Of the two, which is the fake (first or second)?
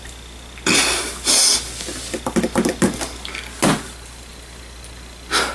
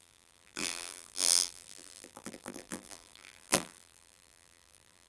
second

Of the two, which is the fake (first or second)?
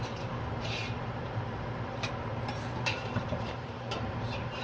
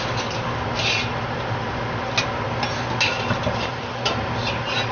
first